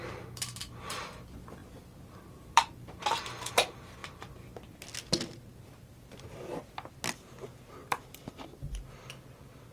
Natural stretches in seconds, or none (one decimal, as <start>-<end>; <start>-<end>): 0.0-1.6; 3.0-7.8; 8.9-9.7